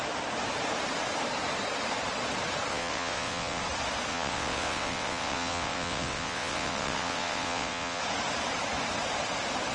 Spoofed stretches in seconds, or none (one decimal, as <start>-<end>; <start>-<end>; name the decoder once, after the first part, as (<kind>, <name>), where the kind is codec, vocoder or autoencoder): 2.7-3.6 (vocoder, WaveNeXt); 4.1-8.0